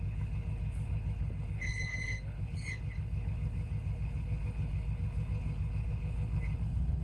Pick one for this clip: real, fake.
fake